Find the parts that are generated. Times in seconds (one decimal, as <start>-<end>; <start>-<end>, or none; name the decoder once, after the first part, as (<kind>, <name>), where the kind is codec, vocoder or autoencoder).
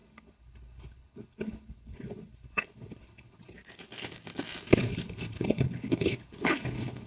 0.0-3.4 (codec, HILCodec); 4.8-7.1